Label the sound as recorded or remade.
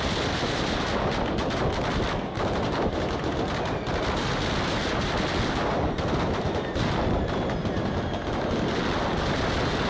recorded